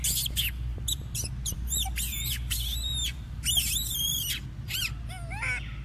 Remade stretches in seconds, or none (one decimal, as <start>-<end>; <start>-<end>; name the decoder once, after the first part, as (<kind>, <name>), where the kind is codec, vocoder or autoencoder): 0.7-4.2 (vocoder, BigVGAN v2)